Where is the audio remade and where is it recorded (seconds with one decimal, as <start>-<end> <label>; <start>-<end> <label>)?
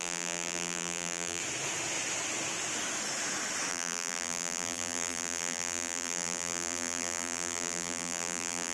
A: 0.0-1.4 remade; 1.4-3.7 recorded; 3.7-8.7 remade